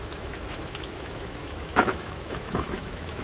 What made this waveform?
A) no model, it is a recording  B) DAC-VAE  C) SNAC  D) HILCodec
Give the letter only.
B